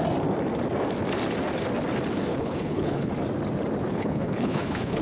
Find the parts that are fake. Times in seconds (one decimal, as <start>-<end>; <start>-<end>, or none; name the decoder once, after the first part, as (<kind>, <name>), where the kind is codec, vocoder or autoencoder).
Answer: 2.3-3.1 (codec, HILCodec); 3.9-5.0